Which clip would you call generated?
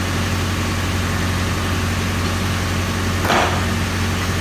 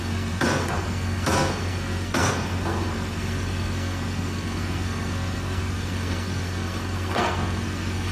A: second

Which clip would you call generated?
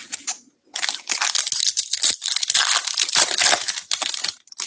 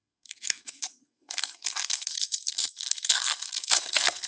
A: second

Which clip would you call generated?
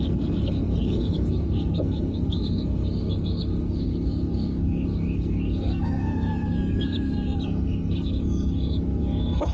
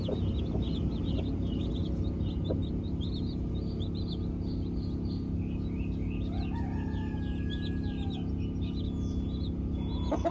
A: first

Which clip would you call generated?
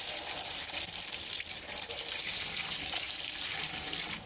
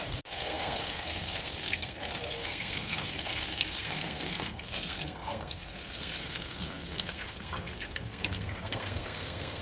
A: second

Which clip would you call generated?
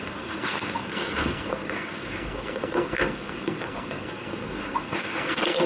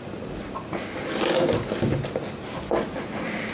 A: first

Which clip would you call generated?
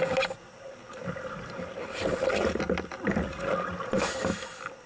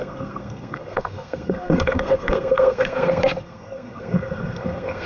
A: second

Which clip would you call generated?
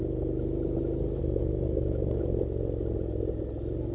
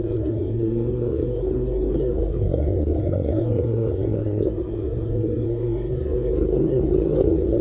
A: second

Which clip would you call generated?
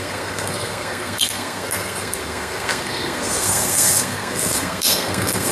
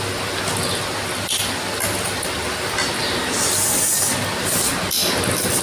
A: first